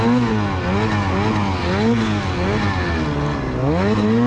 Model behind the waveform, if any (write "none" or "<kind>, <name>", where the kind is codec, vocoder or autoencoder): none